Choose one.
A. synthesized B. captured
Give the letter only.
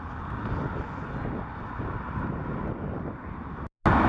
B